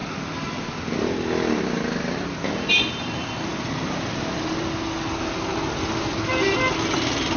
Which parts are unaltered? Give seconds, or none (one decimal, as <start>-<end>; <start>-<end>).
0.0-7.4